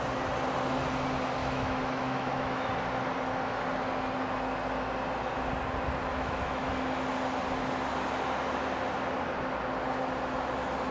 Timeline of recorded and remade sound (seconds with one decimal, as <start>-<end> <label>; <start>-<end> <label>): 0.0-1.4 recorded; 1.4-2.7 remade; 2.7-6.1 recorded; 6.1-6.7 remade; 6.7-10.9 recorded